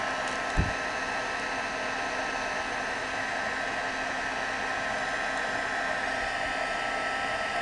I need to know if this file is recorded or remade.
recorded